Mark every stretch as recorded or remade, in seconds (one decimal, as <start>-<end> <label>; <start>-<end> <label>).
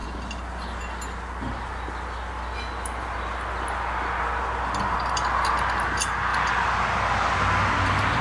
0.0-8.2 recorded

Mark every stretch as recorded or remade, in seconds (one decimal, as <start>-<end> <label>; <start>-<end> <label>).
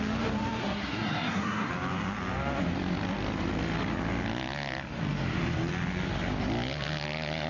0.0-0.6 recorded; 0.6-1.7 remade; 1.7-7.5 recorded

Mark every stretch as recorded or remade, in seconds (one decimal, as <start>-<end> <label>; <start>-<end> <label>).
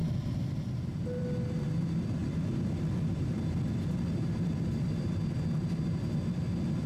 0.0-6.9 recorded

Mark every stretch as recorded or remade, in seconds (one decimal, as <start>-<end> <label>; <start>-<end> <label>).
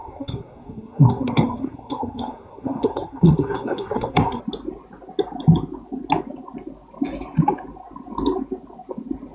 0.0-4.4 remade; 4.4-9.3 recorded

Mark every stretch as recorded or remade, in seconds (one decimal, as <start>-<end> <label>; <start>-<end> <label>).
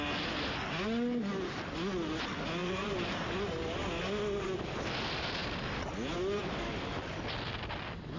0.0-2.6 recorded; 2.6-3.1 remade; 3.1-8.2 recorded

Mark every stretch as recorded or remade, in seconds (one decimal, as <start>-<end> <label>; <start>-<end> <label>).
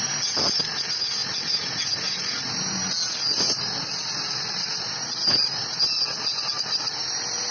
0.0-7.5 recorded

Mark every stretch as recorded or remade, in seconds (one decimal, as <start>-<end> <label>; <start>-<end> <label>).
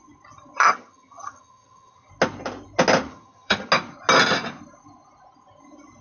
0.0-0.7 recorded; 0.7-2.1 remade; 2.1-3.1 recorded; 3.1-3.7 remade; 3.7-6.0 recorded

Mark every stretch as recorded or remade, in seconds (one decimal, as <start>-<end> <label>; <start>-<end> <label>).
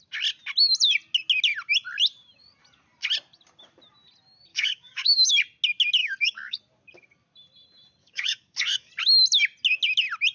0.0-4.5 recorded; 4.5-5.3 remade; 5.3-6.0 recorded; 6.0-6.6 remade; 6.6-8.0 recorded; 8.0-8.9 remade; 8.9-10.3 recorded